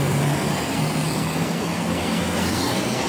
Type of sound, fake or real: fake